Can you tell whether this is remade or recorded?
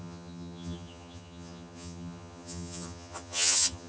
remade